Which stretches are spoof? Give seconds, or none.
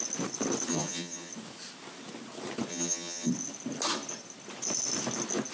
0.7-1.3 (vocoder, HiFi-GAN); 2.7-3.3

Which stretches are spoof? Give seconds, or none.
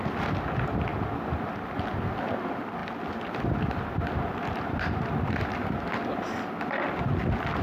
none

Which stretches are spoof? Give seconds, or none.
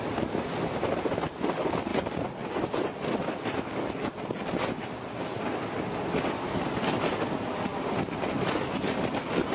none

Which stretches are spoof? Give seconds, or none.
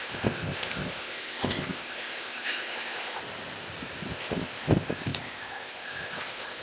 0.0-3.2 (codec, ZipCodec); 4.1-6.6